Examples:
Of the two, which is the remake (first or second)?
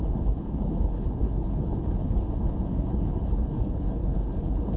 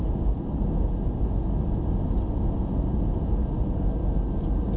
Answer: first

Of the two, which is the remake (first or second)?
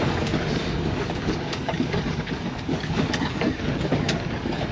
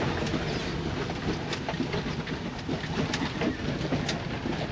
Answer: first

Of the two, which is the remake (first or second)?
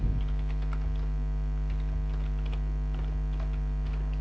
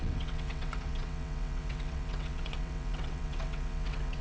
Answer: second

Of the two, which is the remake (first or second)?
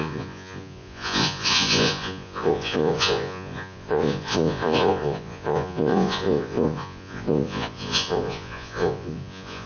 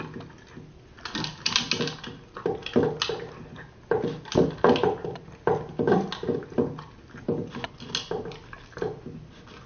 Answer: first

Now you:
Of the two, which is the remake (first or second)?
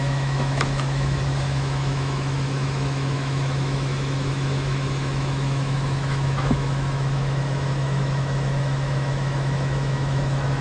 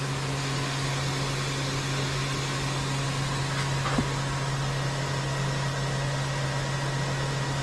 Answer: first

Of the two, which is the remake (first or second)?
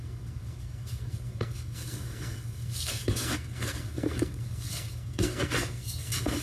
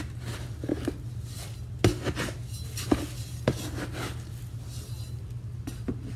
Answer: first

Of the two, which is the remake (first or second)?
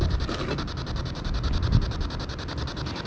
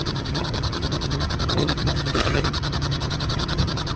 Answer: second